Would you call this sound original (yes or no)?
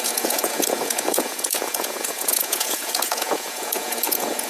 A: no